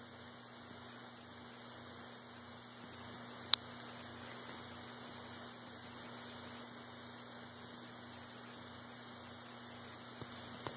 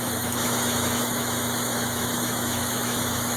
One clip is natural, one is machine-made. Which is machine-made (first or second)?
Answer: second